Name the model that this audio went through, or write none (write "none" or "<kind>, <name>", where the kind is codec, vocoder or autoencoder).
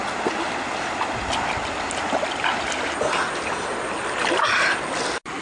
none